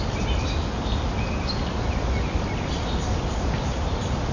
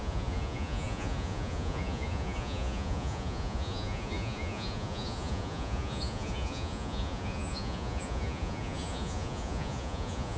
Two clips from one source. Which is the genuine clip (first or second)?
first